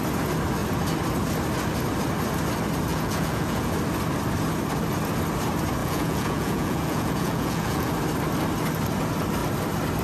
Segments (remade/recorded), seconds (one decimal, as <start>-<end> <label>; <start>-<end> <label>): 0.0-2.9 recorded; 2.9-3.7 remade; 3.7-5.8 recorded; 5.8-7.9 remade; 7.9-10.0 recorded